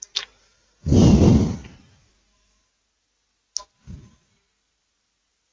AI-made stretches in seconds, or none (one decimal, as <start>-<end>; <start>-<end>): none